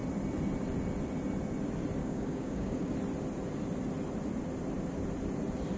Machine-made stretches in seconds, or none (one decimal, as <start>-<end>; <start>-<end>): 2.0-2.9